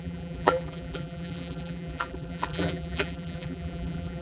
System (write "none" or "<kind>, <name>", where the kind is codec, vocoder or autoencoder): vocoder, BigVGAN v2